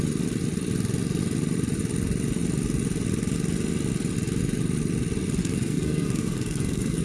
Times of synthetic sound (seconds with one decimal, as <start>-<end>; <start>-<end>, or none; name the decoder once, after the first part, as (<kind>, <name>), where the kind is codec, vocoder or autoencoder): 5.4-7.0 (codec, SNAC)